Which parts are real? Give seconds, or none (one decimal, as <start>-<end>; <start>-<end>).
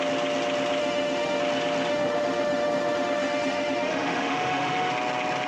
0.0-0.8; 1.4-1.9; 4.9-5.5